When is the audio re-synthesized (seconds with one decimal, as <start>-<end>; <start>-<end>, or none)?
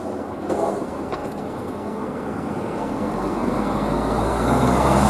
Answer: 0.0-5.1